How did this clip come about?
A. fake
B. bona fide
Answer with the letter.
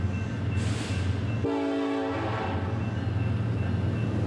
B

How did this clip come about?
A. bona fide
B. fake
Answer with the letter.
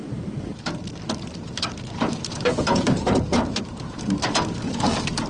B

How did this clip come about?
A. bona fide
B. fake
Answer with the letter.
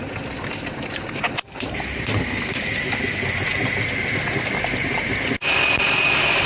B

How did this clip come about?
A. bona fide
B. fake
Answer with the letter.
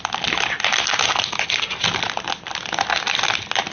A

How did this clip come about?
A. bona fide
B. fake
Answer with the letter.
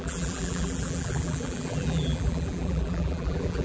B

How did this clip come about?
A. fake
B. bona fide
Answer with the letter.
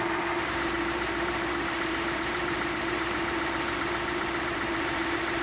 A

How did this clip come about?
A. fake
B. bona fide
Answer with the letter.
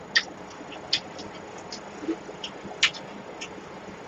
B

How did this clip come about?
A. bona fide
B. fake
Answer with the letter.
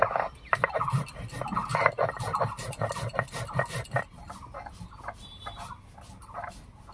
A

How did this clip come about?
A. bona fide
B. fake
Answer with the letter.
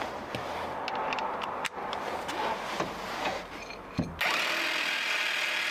A